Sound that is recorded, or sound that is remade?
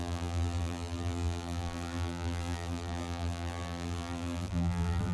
remade